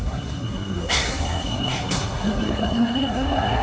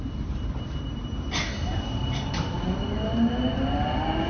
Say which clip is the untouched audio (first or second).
second